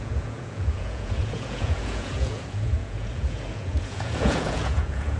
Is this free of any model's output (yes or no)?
no